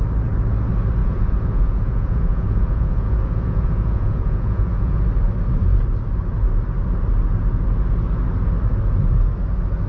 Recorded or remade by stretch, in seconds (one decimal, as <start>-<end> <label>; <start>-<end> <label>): 0.0-1.0 recorded; 1.0-5.0 remade; 5.0-9.9 recorded